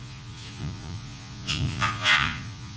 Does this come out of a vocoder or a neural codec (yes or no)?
yes